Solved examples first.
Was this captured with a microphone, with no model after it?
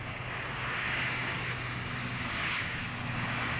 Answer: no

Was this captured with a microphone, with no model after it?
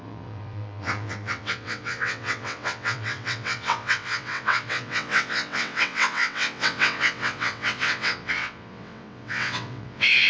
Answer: no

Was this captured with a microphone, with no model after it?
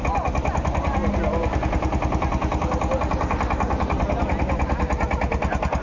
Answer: yes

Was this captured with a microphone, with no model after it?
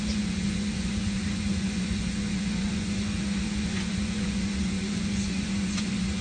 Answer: no